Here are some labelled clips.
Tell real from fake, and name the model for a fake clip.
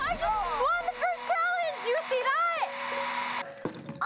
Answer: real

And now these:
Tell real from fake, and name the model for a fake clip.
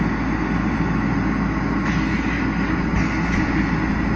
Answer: real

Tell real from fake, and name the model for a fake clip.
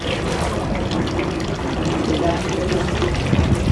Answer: real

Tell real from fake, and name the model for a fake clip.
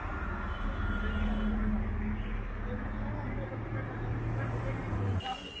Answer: real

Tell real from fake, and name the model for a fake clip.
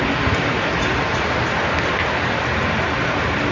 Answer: real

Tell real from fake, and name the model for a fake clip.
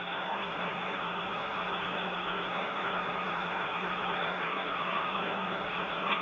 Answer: fake, codec, SNAC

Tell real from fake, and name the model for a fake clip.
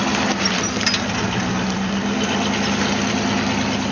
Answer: real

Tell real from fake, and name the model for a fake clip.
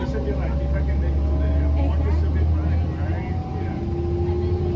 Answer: real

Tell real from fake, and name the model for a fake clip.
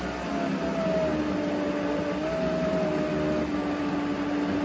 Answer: real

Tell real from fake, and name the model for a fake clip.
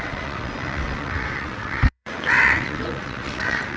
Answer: fake, vocoder, WaveNeXt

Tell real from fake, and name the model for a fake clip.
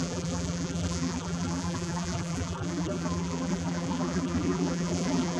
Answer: fake, vocoder, BigVGAN v2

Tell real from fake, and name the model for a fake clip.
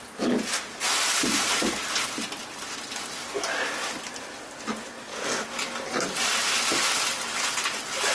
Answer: real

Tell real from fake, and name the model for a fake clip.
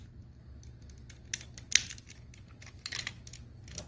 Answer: real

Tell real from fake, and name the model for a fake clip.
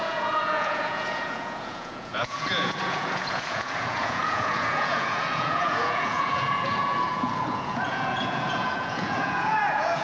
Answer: fake, vocoder, Vocos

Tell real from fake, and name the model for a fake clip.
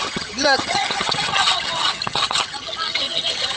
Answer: fake, vocoder, HiFi-GAN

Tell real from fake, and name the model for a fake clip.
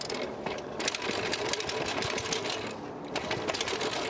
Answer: real